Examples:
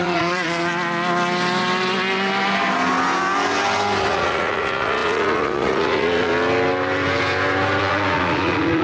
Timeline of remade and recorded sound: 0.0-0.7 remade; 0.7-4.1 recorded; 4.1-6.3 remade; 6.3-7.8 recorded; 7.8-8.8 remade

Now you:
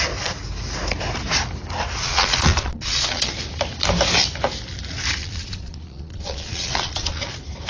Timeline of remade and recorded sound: 0.0-2.0 recorded; 2.0-3.3 remade; 3.3-5.2 recorded; 5.2-7.3 remade; 7.3-7.7 recorded